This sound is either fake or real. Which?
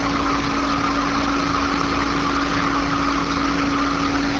real